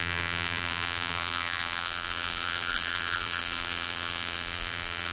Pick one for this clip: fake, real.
fake